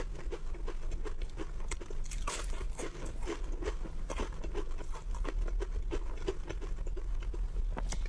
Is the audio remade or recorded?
recorded